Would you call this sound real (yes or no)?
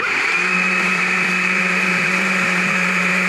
no